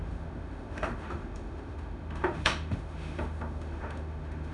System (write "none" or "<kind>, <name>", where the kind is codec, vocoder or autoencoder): autoencoder, DAC-VAE